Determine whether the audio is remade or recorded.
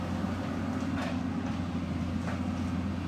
recorded